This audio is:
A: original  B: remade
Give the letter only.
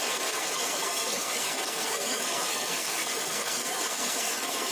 B